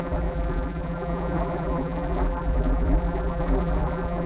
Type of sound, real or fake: fake